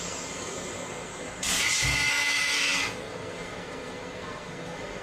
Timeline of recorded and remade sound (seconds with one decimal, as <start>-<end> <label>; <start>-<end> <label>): 0.0-1.5 remade; 1.5-2.1 recorded; 2.1-5.0 remade